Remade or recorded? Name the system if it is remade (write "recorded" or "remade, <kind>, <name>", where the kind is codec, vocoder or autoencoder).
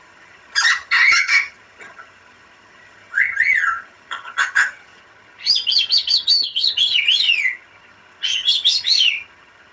remade, vocoder, HiFi-GAN